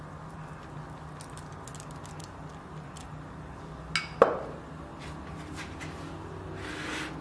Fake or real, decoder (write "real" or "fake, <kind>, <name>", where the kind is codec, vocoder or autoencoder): real